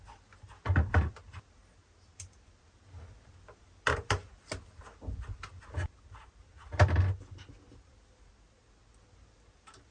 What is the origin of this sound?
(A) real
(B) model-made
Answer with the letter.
A